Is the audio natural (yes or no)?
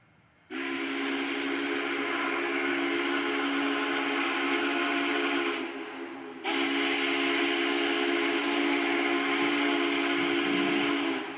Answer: yes